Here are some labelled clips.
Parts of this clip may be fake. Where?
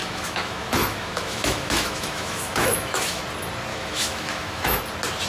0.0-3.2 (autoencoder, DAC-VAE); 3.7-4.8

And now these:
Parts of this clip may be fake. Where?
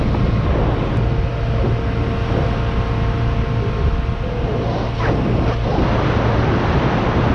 none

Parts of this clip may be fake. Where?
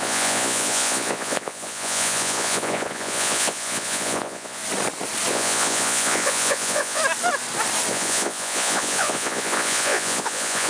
0.0-4.6 (vocoder, Vocos); 5.3-7.0; 7.9-10.7